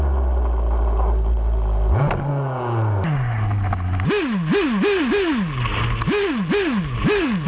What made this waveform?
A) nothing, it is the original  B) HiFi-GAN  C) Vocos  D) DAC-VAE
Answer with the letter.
A